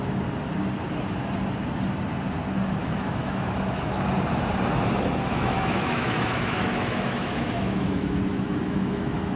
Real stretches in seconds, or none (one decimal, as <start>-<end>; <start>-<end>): 0.0-2.8; 3.9-5.3